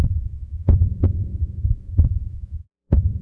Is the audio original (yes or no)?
no